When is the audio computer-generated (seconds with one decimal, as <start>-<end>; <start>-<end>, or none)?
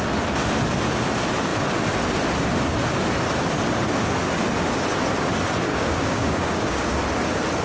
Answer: 5.7-7.0